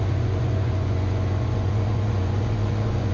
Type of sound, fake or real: fake